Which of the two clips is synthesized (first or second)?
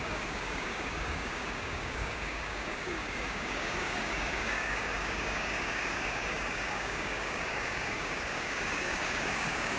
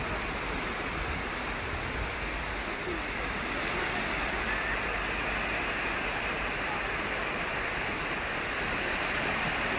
first